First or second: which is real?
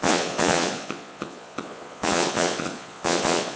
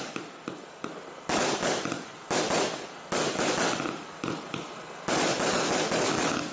second